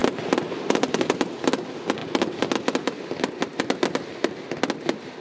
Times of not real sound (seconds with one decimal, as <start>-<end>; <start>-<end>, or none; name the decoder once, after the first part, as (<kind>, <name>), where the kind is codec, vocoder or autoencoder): 0.0-1.4 (vocoder, BigVGAN v2)